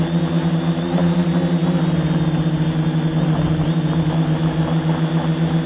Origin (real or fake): real